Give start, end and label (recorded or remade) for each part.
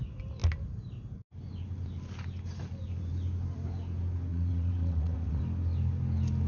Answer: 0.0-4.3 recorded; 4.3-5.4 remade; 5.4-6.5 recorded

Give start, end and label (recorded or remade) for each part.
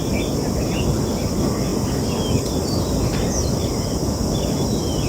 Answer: 0.0-5.1 recorded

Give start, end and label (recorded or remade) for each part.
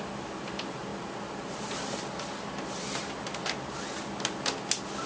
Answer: 0.0-5.1 recorded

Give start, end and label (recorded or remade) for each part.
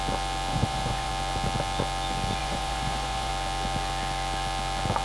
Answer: 0.0-0.5 recorded; 0.5-1.1 remade; 1.1-2.4 recorded; 2.4-3.3 remade; 3.3-5.0 recorded